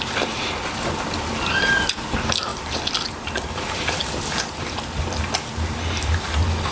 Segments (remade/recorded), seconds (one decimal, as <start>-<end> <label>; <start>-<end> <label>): 0.0-2.5 recorded; 2.5-4.4 remade; 4.4-6.7 recorded